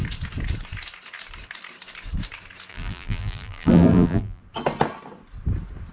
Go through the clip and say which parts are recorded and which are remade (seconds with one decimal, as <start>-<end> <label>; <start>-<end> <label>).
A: 0.0-2.7 recorded; 2.7-4.4 remade; 4.4-5.9 recorded